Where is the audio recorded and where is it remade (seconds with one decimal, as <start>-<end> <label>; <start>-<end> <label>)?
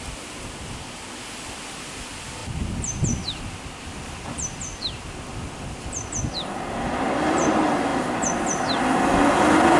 0.0-9.8 recorded